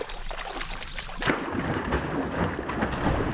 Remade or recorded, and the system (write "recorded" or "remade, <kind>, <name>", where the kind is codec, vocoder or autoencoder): recorded